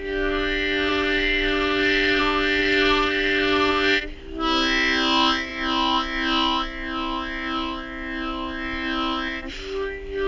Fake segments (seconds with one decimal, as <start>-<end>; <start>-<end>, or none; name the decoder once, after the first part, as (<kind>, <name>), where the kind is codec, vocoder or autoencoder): 0.9-2.2 (autoencoder, DAC-VAE); 2.6-3.7